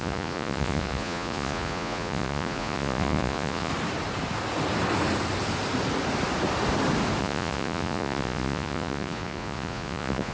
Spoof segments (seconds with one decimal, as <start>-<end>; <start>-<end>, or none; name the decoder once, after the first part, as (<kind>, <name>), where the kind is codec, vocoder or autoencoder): 0.0-3.7 (vocoder, Vocos); 7.2-10.3